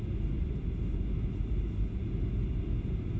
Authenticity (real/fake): real